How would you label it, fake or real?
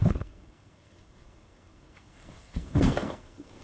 fake